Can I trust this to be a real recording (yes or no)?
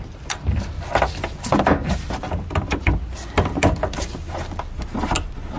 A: yes